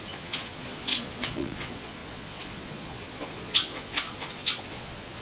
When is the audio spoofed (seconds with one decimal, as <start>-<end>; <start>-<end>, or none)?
0.0-5.2